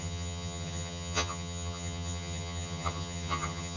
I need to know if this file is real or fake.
fake